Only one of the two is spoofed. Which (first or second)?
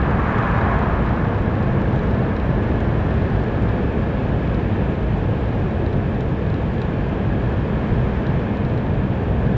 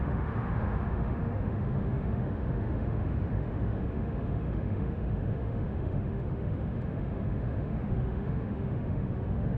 second